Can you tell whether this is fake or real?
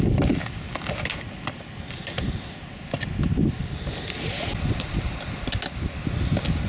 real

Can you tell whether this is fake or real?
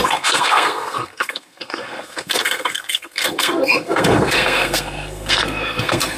fake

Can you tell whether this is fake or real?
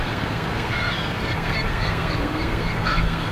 fake